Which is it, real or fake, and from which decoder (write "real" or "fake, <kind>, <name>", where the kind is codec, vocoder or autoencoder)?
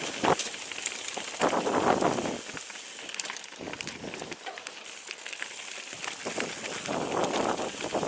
real